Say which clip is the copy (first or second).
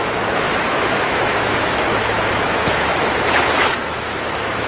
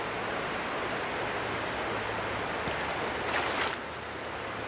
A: first